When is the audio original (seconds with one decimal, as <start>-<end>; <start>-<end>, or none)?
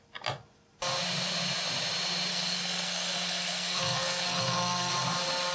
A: 0.0-2.3; 4.9-5.5